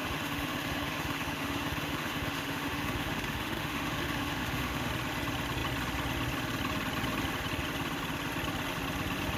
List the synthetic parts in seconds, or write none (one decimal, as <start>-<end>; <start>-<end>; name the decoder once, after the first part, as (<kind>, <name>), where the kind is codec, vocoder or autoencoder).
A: 0.0-4.9 (autoencoder, DAC-VAE)